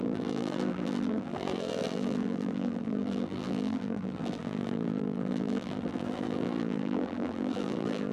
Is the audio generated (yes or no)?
yes